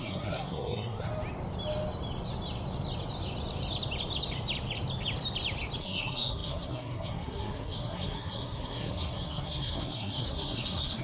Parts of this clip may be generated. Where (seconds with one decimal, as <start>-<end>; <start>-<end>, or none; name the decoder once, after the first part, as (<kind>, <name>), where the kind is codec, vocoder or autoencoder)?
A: 0.0-1.1 (codec, SNAC); 5.8-11.0